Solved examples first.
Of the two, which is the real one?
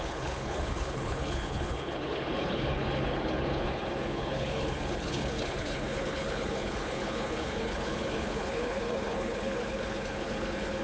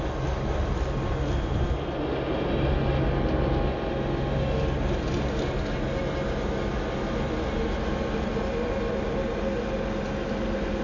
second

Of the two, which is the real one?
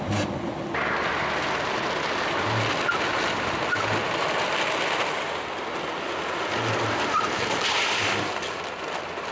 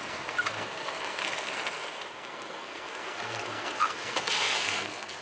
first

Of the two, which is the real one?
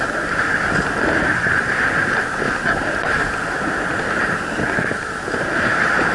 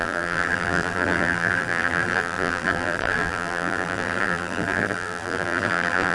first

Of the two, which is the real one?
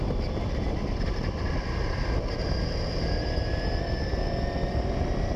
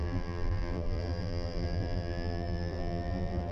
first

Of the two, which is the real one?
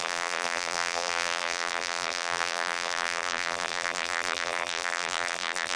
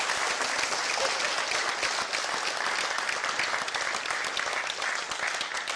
second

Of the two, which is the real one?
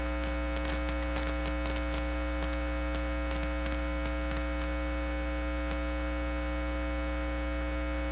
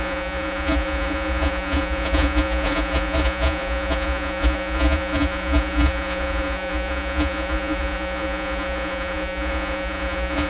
first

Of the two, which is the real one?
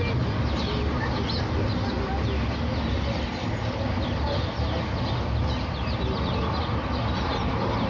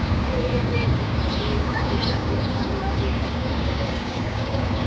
first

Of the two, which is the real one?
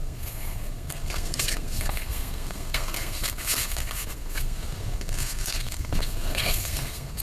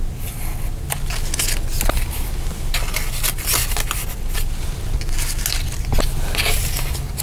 second